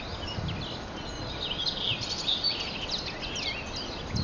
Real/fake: real